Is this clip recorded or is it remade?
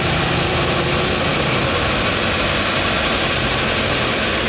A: recorded